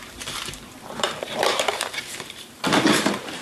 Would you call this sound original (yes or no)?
no